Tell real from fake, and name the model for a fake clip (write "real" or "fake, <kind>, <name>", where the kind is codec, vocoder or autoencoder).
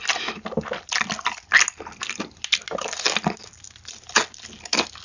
real